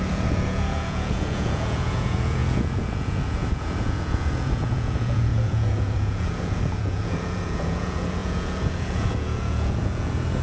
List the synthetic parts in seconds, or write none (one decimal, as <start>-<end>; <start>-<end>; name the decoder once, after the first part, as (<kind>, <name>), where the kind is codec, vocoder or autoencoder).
0.0-10.4 (vocoder, Vocos)